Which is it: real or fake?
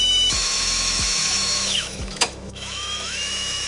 fake